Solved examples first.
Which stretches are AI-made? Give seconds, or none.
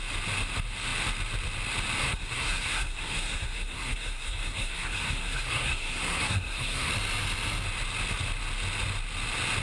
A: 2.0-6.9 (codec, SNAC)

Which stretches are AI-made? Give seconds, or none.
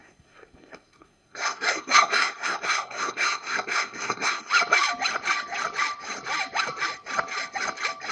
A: 0.0-4.5 (codec, SNAC)